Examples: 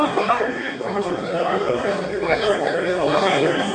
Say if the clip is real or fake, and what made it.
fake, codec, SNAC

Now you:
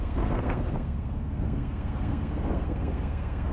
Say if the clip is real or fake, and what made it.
fake, codec, SNAC